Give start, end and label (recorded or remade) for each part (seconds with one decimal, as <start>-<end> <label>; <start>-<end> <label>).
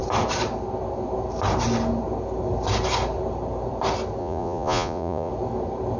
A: 0.0-4.2 recorded; 4.2-5.3 remade; 5.3-6.0 recorded